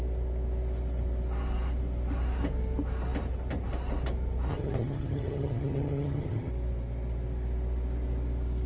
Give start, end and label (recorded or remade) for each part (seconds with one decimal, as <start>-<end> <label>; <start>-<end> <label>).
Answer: 0.0-4.5 recorded; 4.5-6.5 remade; 6.5-8.7 recorded